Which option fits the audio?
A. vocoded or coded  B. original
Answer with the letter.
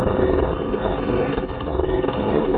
A